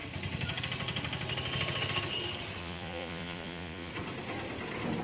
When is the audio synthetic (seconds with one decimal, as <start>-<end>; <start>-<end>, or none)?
2.6-3.9

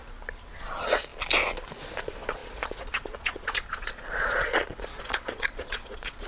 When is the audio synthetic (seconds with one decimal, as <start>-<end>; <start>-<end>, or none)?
0.6-1.1; 2.0-6.3